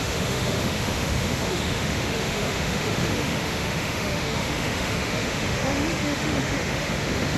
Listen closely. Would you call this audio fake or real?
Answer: fake